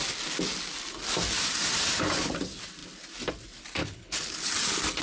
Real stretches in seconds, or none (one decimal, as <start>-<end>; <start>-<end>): 0.0-3.8; 4.5-5.0